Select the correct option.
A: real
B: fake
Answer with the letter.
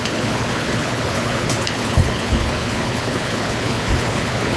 B